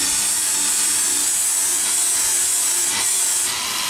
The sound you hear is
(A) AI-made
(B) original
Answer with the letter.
B